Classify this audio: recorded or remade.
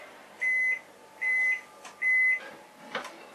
recorded